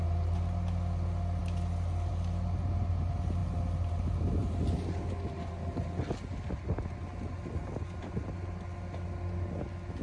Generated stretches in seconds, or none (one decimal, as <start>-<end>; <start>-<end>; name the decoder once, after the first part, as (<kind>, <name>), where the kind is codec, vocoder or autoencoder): none